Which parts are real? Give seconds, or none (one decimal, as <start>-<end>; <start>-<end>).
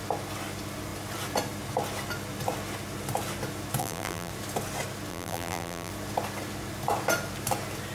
0.0-3.8; 4.3-5.1; 5.9-7.9